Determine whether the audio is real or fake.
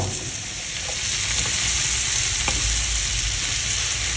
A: real